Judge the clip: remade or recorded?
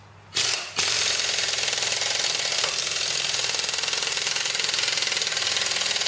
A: recorded